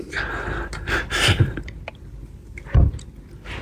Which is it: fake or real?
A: real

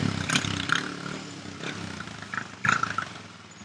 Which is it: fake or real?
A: real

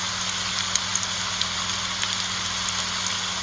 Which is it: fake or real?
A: real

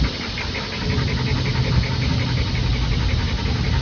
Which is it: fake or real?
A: real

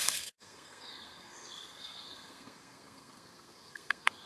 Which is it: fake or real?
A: fake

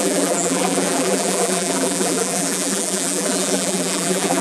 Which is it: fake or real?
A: fake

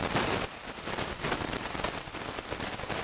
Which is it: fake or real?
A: real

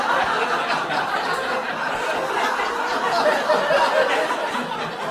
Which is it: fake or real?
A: real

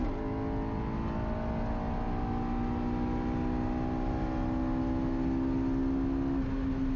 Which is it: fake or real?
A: real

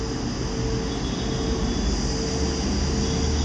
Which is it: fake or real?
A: real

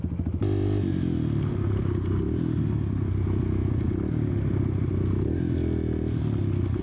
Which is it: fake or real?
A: real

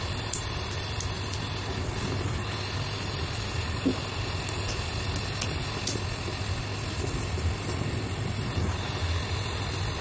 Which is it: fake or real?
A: real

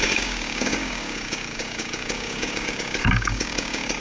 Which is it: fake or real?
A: fake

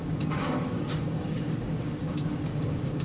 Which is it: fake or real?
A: fake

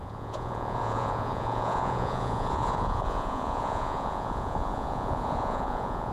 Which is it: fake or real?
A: fake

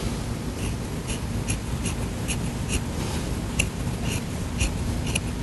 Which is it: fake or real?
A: real